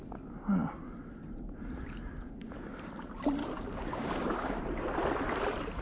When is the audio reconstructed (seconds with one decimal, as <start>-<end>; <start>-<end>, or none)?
3.4-4.6